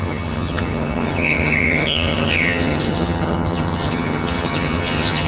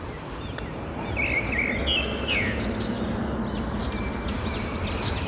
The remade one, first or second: first